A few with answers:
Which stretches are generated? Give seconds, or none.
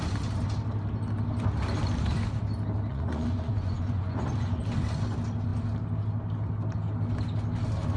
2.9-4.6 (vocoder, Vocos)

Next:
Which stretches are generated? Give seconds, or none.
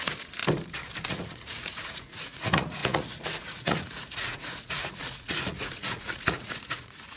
0.0-0.4 (vocoder, Vocos); 1.1-7.2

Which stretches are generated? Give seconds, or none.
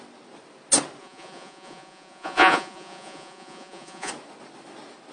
1.0-4.1 (vocoder, Vocos)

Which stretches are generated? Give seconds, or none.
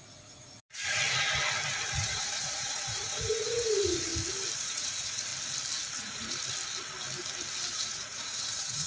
0.0-1.0 (vocoder, Vocos); 1.9-4.1; 4.6-5.3; 6.0-6.4; 7.7-8.9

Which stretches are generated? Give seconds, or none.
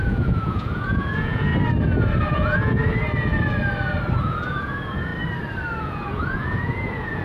0.0-1.5 (vocoder, Vocos); 2.2-2.8; 4.2-5.1; 5.8-7.2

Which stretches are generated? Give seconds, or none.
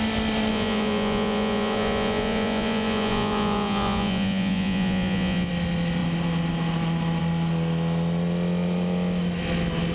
0.5-5.5 (vocoder, Vocos)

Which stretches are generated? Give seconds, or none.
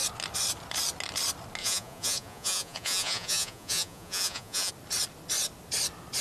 1.6-4.7 (vocoder, Vocos)